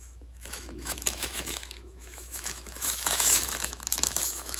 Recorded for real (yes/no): no